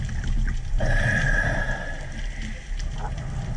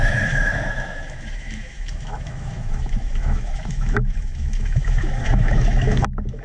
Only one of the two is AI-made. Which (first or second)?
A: second